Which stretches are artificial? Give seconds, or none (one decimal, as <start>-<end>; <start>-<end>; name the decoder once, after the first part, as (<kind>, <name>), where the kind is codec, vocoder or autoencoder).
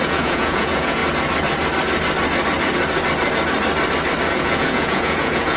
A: 0.0-1.0 (vocoder, Vocos); 4.3-5.6